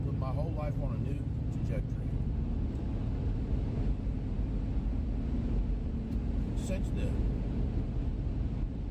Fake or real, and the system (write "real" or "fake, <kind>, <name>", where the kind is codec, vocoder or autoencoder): real